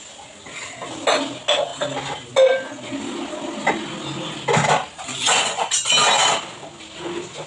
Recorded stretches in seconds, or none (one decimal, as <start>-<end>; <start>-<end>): 0.0-5.1; 5.7-7.5